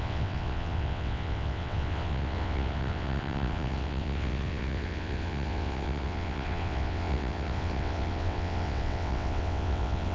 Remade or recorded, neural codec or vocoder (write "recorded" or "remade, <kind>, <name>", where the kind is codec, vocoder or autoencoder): remade, vocoder, WaveNeXt